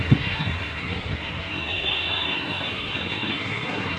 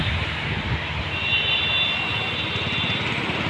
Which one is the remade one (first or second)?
first